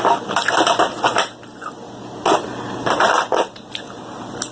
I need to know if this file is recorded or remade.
recorded